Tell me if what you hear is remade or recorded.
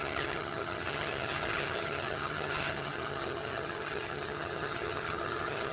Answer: remade